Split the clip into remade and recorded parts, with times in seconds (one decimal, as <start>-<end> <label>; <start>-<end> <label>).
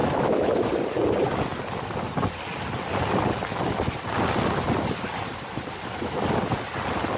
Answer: 0.0-0.7 remade; 0.7-7.2 recorded